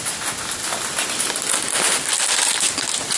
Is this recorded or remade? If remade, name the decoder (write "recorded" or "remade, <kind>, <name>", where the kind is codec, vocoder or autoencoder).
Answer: recorded